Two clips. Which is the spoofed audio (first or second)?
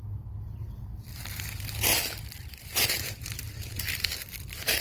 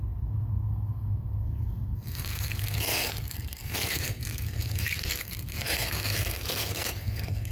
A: second